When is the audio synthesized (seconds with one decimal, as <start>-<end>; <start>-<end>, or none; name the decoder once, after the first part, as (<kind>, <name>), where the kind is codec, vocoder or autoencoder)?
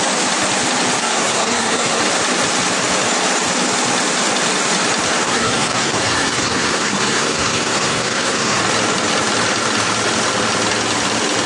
1.0-2.0 (codec, SNAC); 5.2-8.6